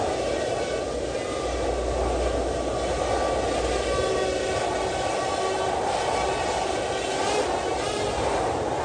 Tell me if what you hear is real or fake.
real